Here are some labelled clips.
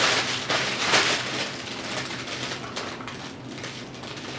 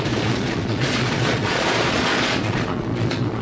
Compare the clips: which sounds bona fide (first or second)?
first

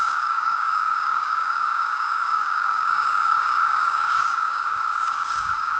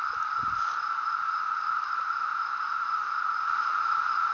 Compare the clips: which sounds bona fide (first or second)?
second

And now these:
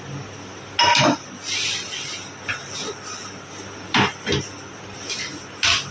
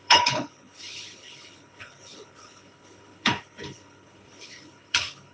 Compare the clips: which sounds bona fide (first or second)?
first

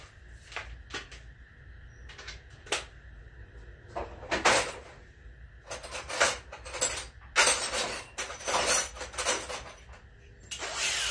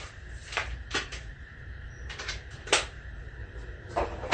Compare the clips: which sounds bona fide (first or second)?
first